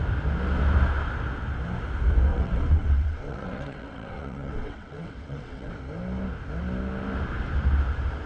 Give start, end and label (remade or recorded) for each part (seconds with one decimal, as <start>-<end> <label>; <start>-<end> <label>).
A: 0.0-2.3 recorded; 2.3-5.7 remade; 5.7-8.3 recorded